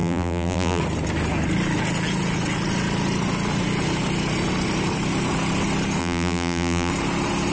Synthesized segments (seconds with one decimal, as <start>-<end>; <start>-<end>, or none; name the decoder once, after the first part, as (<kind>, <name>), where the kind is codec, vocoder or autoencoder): 0.0-0.8 (vocoder, BigVGAN v2); 6.0-6.9